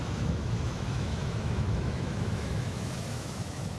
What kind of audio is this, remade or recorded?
remade